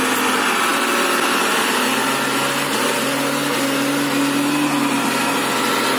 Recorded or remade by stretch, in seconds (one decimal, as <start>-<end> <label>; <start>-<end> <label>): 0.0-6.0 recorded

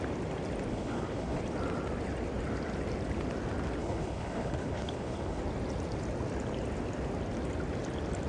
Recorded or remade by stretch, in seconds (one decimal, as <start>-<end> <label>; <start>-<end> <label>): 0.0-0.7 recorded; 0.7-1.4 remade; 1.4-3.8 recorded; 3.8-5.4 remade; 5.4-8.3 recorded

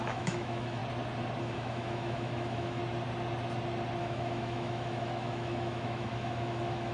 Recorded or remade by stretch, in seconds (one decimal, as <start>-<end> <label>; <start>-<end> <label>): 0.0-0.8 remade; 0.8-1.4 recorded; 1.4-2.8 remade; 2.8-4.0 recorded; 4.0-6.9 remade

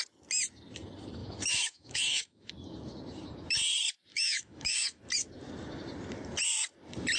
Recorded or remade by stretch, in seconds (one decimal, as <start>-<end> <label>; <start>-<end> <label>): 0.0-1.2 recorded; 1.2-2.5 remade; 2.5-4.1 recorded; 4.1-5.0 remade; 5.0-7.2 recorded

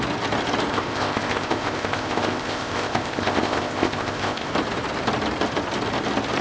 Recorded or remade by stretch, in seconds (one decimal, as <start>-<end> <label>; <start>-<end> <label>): 0.0-0.7 recorded; 0.7-4.5 remade; 4.5-6.4 recorded

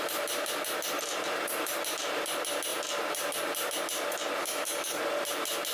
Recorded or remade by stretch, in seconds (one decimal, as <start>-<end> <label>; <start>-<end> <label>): 0.0-4.4 recorded; 4.4-5.0 remade; 5.0-5.7 recorded

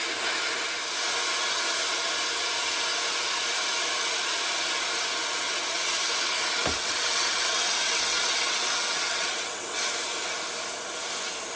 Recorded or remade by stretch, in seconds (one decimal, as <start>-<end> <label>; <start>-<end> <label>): 0.0-6.7 recorded; 6.7-9.9 remade; 9.9-11.6 recorded